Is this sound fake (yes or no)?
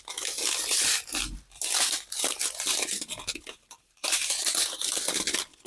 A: no